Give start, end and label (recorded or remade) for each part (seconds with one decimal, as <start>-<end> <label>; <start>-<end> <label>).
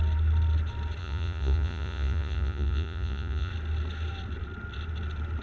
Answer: 0.0-1.0 recorded; 1.0-3.5 remade; 3.5-5.4 recorded